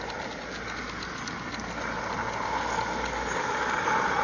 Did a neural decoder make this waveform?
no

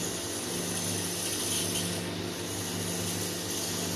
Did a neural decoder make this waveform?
no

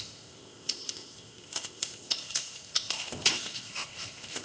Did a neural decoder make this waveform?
yes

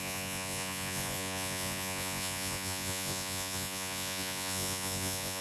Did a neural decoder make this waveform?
yes